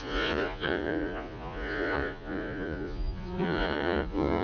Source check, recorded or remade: remade